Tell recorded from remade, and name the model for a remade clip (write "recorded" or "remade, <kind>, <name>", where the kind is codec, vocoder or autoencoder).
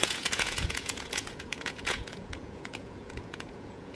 remade, vocoder, Vocos